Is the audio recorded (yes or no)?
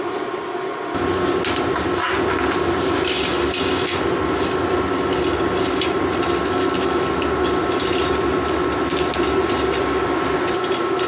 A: yes